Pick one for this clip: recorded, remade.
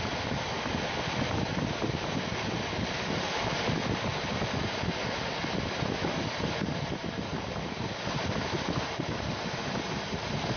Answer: recorded